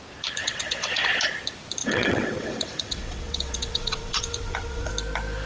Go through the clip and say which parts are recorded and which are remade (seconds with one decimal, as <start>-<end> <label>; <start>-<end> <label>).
0.0-0.4 recorded; 0.4-1.1 remade; 1.1-1.8 recorded; 1.8-4.9 remade; 4.9-5.5 recorded